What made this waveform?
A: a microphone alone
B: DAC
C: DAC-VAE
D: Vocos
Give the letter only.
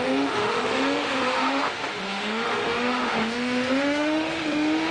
C